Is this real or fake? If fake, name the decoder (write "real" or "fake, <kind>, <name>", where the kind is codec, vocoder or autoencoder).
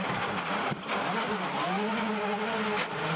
real